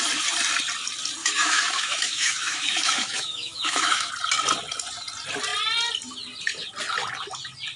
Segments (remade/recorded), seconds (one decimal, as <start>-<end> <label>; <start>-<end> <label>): 0.0-1.2 recorded; 1.2-4.1 remade; 4.1-7.8 recorded